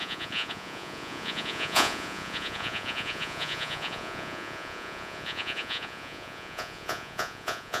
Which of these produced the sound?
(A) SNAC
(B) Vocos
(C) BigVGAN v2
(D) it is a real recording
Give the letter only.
B